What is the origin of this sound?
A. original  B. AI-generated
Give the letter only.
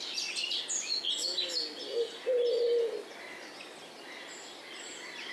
A